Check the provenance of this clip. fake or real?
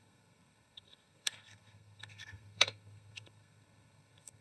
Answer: fake